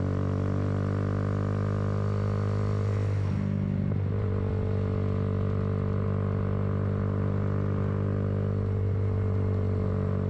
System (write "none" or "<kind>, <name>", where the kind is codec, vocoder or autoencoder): none